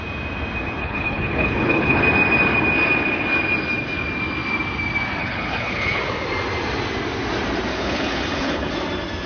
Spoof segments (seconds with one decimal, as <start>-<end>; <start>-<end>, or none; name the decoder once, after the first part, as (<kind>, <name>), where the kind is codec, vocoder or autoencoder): 0.8-2.0 (codec, HILCodec); 5.2-6.0; 7.7-8.7